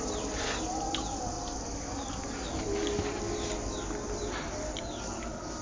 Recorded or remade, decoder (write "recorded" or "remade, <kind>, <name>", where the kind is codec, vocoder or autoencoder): recorded